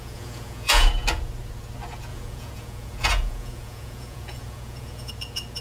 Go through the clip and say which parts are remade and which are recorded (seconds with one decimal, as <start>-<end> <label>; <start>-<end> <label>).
0.0-0.9 remade; 0.9-2.1 recorded; 2.1-5.1 remade; 5.1-5.6 recorded